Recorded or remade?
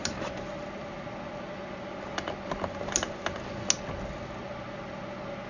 recorded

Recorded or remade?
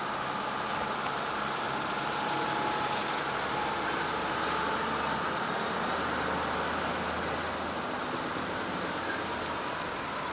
recorded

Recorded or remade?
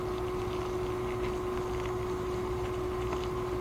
recorded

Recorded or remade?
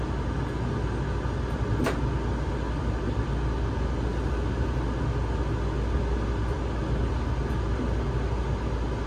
recorded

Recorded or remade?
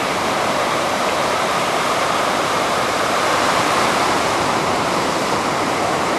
remade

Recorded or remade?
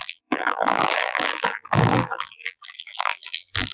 remade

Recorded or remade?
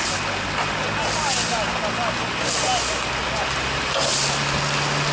recorded